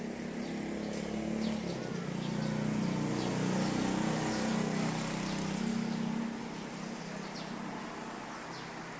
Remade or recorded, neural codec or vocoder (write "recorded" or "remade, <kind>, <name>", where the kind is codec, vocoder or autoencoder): recorded